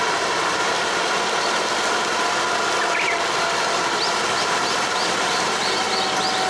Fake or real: real